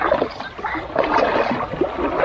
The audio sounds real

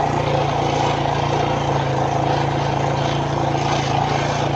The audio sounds real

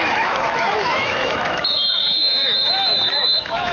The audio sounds fake